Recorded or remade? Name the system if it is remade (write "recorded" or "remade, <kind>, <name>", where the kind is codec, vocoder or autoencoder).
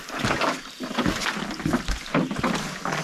recorded